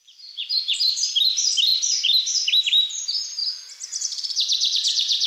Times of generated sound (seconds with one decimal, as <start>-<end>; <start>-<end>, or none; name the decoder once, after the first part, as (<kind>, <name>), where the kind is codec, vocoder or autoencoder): 0.0-3.4 (vocoder, BigVGAN v2); 4.0-5.3